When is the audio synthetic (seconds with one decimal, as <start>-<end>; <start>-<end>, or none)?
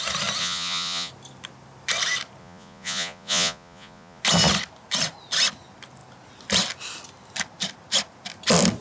0.4-1.1; 2.4-4.2